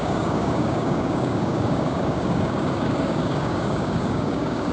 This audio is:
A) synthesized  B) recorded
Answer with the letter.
A